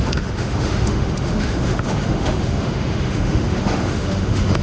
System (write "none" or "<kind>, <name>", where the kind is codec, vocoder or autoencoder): autoencoder, DAC-VAE